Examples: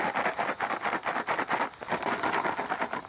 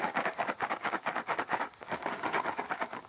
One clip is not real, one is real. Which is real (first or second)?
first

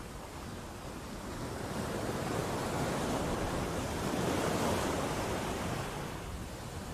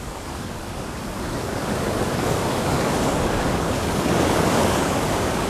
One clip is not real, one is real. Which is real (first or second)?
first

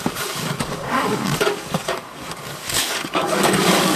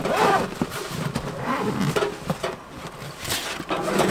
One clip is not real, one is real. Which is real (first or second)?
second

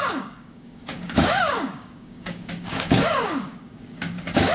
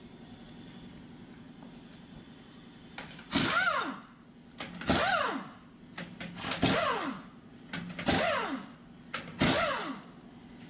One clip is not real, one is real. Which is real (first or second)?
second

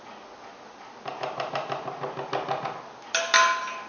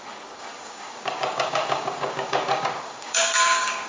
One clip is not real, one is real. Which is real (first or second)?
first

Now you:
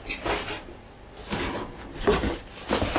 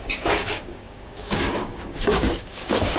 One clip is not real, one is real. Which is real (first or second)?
first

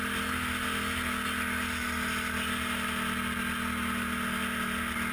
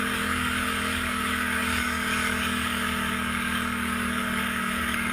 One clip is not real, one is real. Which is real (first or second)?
first